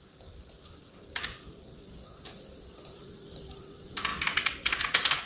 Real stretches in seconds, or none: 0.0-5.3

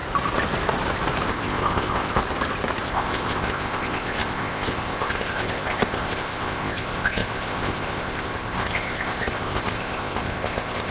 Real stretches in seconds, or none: 0.0-1.3; 2.2-2.8

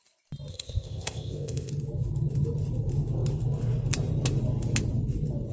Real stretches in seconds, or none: 0.0-0.5; 1.7-5.5

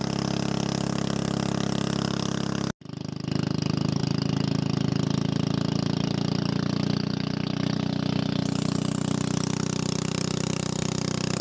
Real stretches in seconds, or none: 0.0-11.4

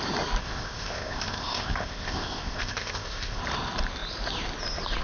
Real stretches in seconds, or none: 0.0-0.4; 3.4-5.0

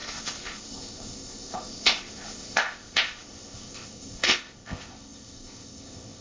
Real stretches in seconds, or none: none

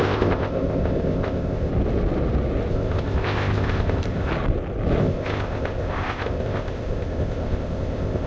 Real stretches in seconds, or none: 1.7-2.7; 4.3-5.0

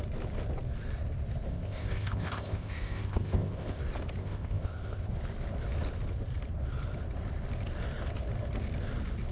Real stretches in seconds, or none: 0.0-1.5; 3.8-4.2; 5.1-9.3